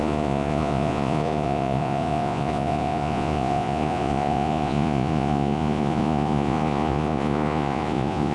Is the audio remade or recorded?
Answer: remade